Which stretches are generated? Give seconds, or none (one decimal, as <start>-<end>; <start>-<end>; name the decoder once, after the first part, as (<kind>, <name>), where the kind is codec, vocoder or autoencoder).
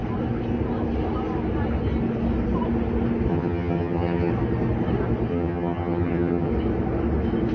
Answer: 3.3-4.3 (vocoder, HiFi-GAN); 5.3-6.5